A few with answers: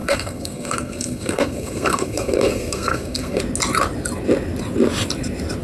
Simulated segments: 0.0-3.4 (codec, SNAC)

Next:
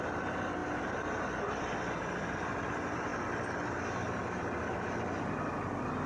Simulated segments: none